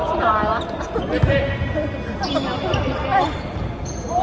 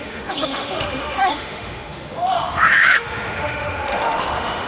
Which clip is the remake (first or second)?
second